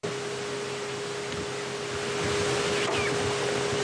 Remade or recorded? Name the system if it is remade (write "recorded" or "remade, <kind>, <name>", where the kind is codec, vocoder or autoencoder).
recorded